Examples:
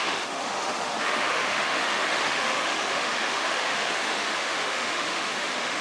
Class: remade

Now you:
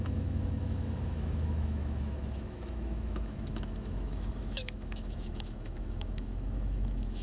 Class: remade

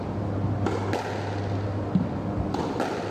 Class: recorded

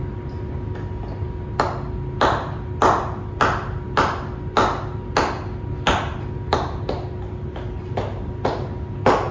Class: recorded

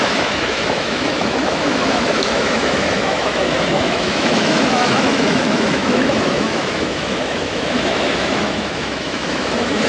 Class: remade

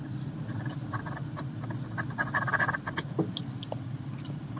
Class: recorded